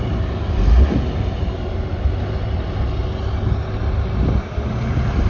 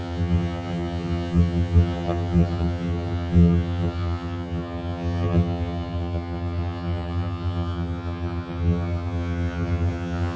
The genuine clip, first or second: first